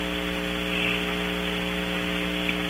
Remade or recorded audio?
recorded